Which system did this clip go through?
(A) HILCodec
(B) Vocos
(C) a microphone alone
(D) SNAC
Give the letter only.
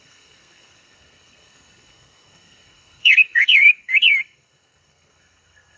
D